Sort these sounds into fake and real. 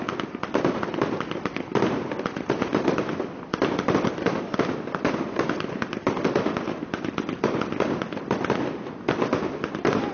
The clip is real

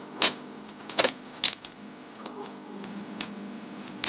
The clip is real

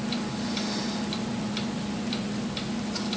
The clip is real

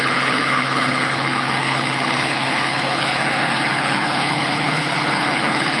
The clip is fake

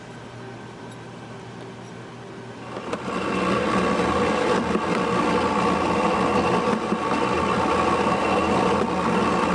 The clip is real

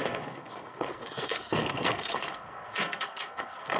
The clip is fake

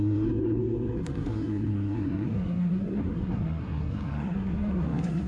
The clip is fake